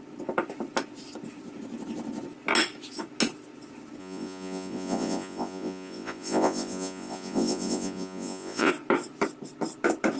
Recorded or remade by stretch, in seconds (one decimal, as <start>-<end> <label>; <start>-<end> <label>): 0.0-4.0 recorded; 4.0-8.7 remade; 8.7-10.2 recorded